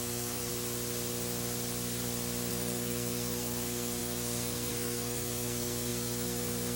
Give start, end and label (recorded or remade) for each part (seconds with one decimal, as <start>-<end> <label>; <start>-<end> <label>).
0.0-0.5 remade; 0.5-2.5 recorded; 2.5-6.8 remade